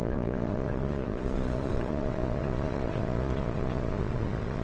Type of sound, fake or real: fake